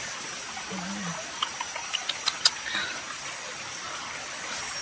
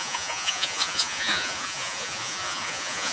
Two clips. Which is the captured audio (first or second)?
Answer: first